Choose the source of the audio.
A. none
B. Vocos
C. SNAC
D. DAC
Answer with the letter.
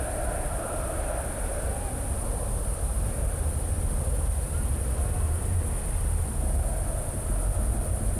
A